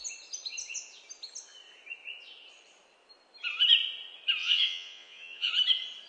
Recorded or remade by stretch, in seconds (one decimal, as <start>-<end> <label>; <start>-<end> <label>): 0.0-4.4 recorded; 4.4-5.5 remade; 5.5-6.1 recorded